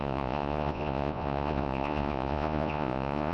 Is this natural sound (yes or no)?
no